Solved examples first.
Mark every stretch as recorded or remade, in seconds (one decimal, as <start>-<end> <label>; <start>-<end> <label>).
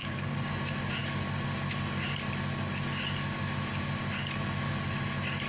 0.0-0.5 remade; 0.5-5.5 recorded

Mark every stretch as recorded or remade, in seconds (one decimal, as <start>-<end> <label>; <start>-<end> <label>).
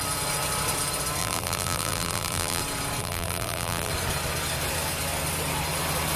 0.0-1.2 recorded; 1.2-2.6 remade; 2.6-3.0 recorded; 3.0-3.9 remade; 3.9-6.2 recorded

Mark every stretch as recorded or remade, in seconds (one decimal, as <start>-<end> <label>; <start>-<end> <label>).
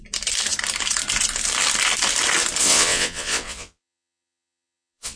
0.0-2.6 recorded; 2.6-5.2 remade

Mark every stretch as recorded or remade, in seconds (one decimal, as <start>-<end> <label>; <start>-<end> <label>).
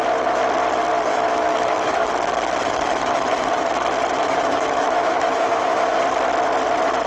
0.0-1.1 recorded; 1.1-2.1 remade; 2.1-2.6 recorded; 2.6-3.7 remade; 3.7-4.2 recorded; 4.2-6.0 remade; 6.0-7.1 recorded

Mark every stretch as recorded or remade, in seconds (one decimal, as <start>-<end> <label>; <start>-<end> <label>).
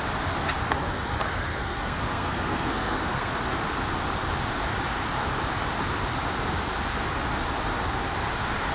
0.0-1.6 recorded; 1.6-3.3 remade; 3.3-8.7 recorded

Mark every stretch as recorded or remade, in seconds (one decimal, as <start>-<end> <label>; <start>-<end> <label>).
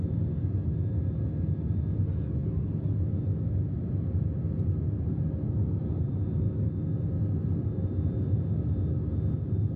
0.0-9.8 recorded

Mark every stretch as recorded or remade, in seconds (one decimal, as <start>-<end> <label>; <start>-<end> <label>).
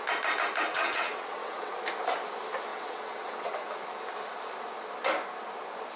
0.0-0.7 recorded; 0.7-1.7 remade; 1.7-2.7 recorded; 2.7-3.7 remade; 3.7-6.0 recorded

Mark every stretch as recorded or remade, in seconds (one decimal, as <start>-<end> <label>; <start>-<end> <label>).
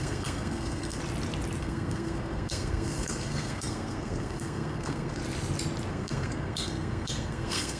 0.0-1.0 remade; 1.0-1.6 recorded; 1.6-5.2 remade; 5.2-5.9 recorded; 5.9-7.8 remade